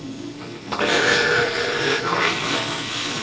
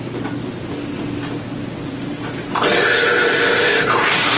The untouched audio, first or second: second